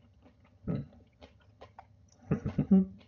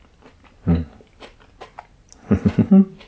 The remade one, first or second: first